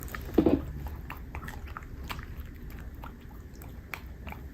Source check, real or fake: real